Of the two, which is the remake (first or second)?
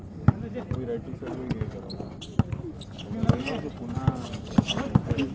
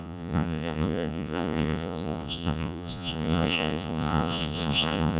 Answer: second